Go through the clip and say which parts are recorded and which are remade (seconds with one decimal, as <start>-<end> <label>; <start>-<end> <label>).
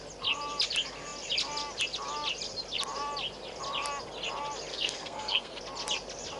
0.0-4.7 recorded; 4.7-5.6 remade; 5.6-6.4 recorded